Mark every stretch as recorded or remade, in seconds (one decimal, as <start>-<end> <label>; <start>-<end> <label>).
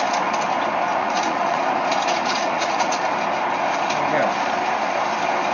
0.0-0.9 recorded; 0.9-1.6 remade; 1.6-2.1 recorded; 2.1-2.9 remade; 2.9-5.5 recorded